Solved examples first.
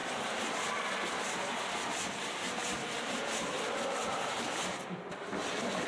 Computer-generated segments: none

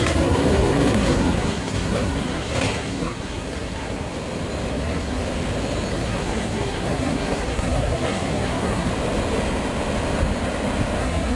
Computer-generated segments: 0.0-4.1 (codec, SNAC); 4.7-5.2; 5.9-8.9; 11.0-11.4

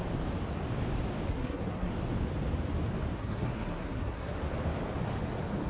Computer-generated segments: 1.3-1.9 (codec, SNAC); 3.2-4.4

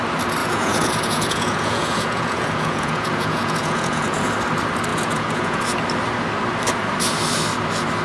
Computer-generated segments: 0.4-4.3 (vocoder, Vocos); 4.9-5.6

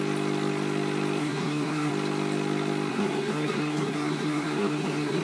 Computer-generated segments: 1.2-1.9 (codec, SNAC); 2.9-5.2

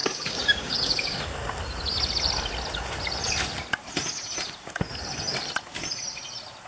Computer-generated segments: 0.0-1.2 (codec, DAC)

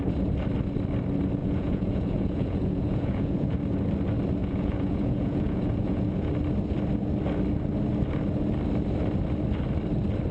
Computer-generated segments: 1.4-3.6 (vocoder, Vocos); 4.4-6.3

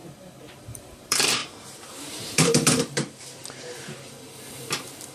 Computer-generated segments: 0.5-5.1 (vocoder, BigVGAN v2)